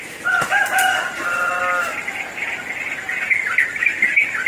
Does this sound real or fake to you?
real